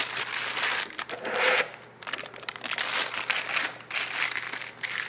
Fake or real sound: real